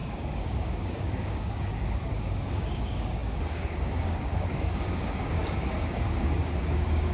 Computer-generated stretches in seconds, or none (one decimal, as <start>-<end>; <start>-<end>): 0.0-7.1